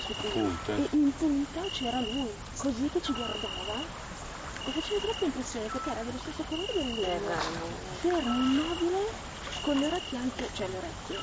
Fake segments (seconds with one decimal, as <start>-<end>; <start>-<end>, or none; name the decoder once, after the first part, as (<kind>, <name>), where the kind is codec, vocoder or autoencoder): none